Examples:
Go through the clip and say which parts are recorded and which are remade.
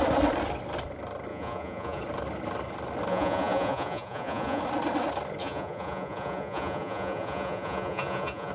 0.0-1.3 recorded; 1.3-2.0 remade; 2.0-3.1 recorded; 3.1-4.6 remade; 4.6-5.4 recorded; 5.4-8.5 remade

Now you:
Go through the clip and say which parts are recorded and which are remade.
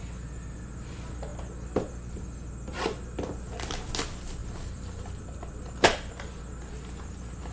0.0-7.5 recorded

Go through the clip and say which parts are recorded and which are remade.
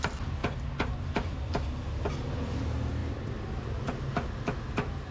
0.0-5.1 recorded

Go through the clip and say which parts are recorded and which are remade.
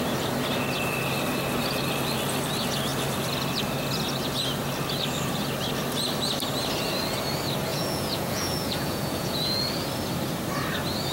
0.0-7.7 recorded; 7.7-9.6 remade; 9.6-11.1 recorded